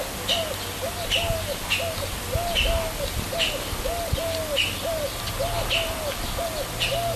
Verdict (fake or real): real